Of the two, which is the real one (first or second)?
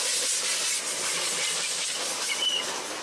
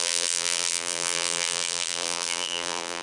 first